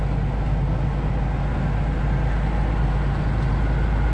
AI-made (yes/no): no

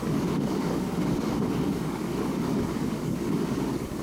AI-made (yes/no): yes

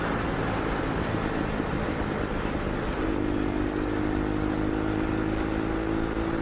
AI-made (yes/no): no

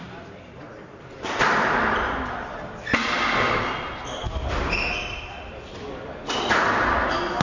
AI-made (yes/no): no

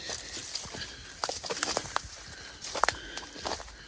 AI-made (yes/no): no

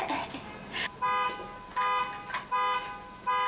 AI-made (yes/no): no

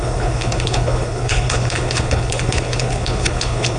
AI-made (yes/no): yes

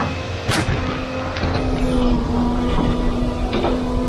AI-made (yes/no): no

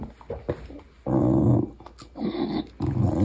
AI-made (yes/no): no